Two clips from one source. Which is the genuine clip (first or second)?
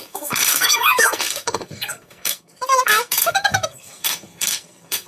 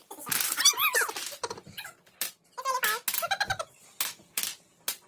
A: second